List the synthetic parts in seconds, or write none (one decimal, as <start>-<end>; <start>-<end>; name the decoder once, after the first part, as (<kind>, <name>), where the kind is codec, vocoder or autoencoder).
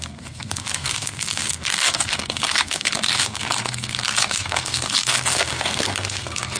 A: 0.0-6.6 (codec, SNAC)